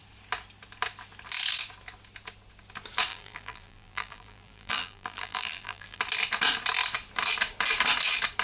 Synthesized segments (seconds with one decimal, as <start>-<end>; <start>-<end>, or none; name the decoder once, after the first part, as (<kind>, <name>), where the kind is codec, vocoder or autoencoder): 3.1-6.0 (vocoder, BigVGAN v2)

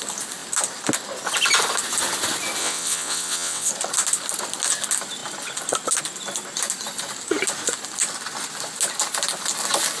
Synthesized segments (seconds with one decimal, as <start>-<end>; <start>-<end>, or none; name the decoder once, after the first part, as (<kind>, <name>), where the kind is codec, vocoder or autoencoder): 2.6-3.7 (vocoder, WaveNeXt)

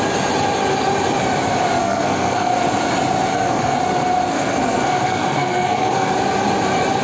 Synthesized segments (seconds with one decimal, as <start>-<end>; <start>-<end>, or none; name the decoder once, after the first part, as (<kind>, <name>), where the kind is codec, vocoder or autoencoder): 1.8-2.5 (codec, SNAC); 3.3-3.8; 4.3-6.1

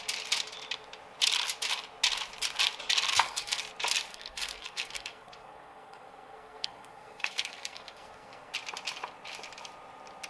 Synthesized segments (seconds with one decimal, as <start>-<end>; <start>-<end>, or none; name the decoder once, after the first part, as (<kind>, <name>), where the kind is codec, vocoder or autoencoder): 3.1-3.6 (codec, SNAC); 4.1-8.5